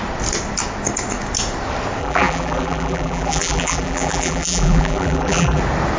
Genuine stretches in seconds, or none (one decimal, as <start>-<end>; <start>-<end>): 0.0-2.0; 5.6-6.0